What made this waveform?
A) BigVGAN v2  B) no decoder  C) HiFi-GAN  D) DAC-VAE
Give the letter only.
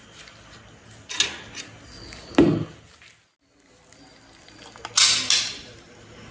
B